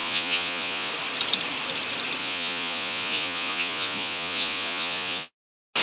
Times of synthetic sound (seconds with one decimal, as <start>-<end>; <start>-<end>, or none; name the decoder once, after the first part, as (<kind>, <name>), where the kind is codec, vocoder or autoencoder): 0.0-0.9 (vocoder, Vocos); 2.2-5.3